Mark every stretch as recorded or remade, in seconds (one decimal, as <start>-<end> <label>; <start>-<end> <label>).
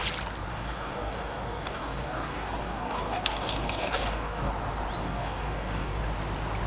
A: 0.0-0.5 recorded; 0.5-4.5 remade; 4.5-5.0 recorded; 5.0-6.0 remade; 6.0-6.7 recorded